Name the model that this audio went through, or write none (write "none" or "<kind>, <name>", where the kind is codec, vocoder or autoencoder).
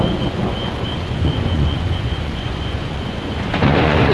vocoder, Vocos